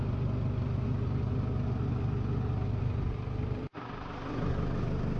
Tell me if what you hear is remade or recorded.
recorded